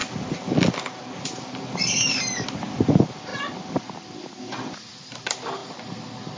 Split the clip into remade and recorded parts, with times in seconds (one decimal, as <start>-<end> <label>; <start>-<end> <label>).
0.0-2.2 remade; 2.2-3.3 recorded; 3.3-5.1 remade; 5.1-6.4 recorded